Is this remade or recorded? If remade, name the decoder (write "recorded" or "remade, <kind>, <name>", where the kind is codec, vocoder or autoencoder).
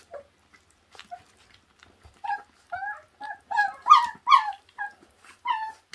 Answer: recorded